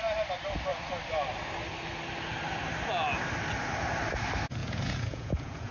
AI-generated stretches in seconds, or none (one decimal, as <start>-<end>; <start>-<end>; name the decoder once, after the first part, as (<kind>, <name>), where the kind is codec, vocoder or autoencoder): 4.6-5.7 (vocoder, Vocos)